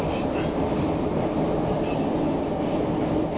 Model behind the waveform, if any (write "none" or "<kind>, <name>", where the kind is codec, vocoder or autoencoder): none